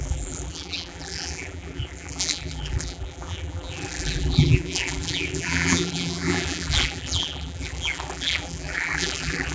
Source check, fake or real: fake